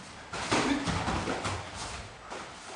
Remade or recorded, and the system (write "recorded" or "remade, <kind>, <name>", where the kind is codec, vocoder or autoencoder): recorded